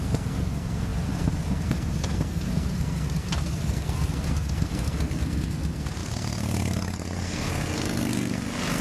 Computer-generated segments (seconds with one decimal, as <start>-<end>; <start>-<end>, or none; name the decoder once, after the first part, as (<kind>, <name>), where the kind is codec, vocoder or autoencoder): 0.0-8.8 (codec, SNAC)